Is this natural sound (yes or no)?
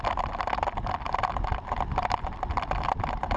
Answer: yes